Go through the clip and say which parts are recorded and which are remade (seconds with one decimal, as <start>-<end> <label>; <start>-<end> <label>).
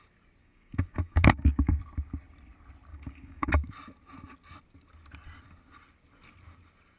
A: 0.0-0.4 recorded; 0.4-1.8 remade; 1.8-2.9 recorded; 2.9-3.5 remade; 3.5-7.0 recorded